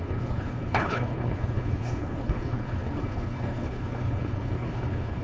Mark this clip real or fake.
fake